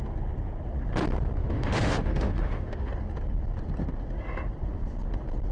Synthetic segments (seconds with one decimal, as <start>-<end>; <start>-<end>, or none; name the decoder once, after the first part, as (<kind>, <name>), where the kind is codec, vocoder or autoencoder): 1.4-2.9 (autoencoder, DAC-VAE)